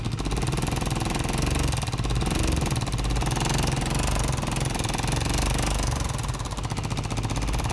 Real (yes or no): yes